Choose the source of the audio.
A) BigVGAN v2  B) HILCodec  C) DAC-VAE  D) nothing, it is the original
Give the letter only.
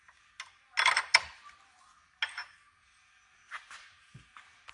D